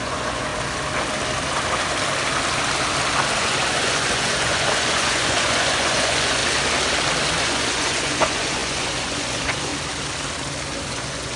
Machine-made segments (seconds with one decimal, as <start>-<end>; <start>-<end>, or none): 0.0-0.5; 3.4-6.4; 7.4-9.7; 10.9-11.4

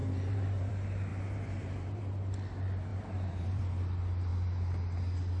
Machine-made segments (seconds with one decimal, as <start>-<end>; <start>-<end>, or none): 0.0-0.7; 1.1-2.0; 2.9-3.6

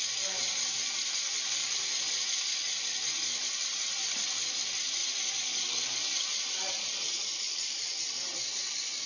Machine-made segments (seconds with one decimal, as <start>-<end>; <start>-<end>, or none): 0.0-9.1

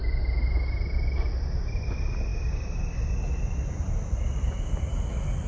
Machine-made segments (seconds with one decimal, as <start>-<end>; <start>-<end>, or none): none

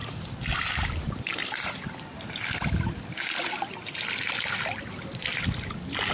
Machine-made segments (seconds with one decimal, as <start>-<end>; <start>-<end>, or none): none

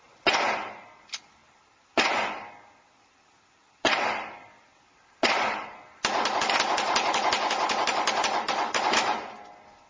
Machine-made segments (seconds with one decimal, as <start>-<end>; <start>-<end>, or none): none

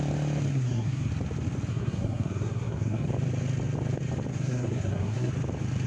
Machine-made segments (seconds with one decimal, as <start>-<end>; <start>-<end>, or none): 0.5-1.1; 1.7-3.1; 4.3-5.3